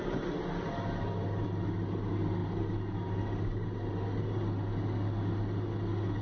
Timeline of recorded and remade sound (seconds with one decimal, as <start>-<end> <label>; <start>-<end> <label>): 0.0-6.2 recorded